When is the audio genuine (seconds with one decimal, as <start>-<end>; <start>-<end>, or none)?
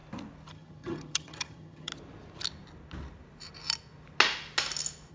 0.0-0.5; 1.9-5.1